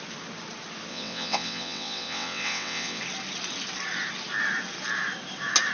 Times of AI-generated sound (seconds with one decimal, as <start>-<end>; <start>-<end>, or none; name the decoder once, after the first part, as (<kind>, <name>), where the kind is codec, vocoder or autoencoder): 0.9-3.0 (vocoder, WaveNeXt)